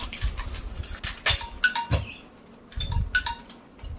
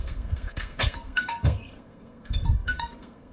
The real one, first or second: first